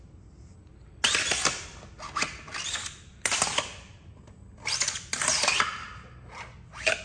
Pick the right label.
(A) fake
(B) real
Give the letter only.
B